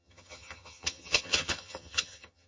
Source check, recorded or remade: remade